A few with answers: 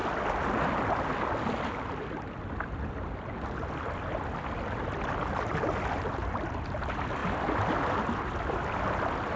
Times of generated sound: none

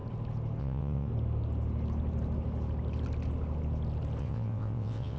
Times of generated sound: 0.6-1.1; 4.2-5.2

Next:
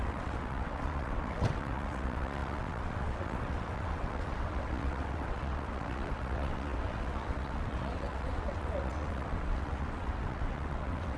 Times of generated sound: 0.0-11.2

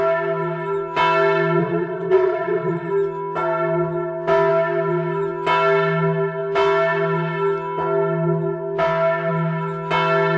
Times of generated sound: 1.6-2.9

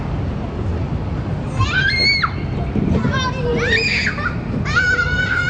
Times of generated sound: none

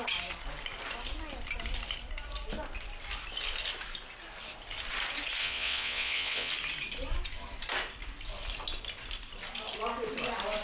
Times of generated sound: 5.4-6.5

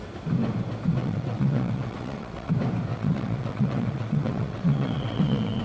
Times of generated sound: 1.0-2.5; 2.9-5.6